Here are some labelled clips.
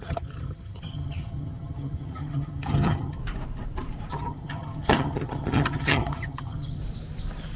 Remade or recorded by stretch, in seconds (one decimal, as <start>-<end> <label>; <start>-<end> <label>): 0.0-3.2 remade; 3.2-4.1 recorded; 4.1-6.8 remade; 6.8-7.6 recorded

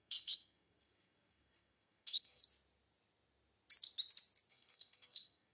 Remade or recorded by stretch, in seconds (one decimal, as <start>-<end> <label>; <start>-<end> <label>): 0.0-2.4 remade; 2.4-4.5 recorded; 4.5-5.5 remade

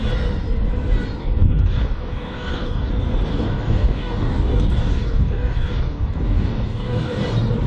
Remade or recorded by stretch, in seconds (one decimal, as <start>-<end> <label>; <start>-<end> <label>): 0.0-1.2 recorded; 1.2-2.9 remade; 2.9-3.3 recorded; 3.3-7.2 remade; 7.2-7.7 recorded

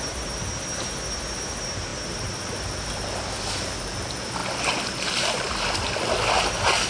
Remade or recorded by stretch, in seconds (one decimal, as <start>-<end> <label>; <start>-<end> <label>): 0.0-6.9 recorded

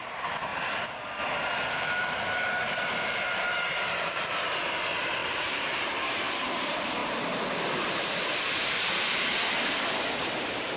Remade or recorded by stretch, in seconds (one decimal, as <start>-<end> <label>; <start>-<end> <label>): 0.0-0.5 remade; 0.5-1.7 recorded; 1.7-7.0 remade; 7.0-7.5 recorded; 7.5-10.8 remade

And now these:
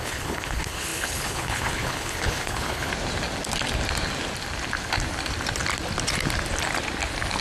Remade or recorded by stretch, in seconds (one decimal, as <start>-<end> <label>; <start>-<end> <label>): 0.0-2.9 remade; 2.9-7.4 recorded

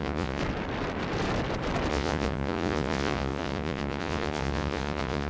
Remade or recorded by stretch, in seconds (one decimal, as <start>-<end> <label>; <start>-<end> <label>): 0.0-0.4 remade; 0.4-1.9 recorded; 1.9-5.3 remade